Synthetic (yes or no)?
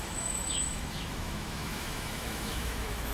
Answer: yes